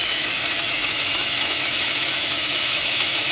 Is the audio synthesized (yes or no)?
yes